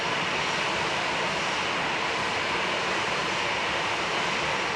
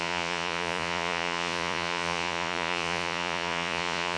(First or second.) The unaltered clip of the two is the first